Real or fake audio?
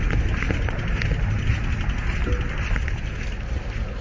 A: real